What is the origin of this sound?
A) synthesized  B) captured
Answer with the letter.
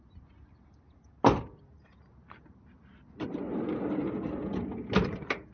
B